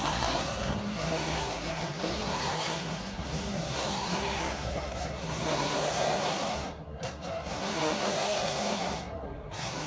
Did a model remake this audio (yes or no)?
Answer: yes